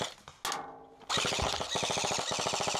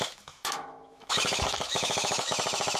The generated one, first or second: second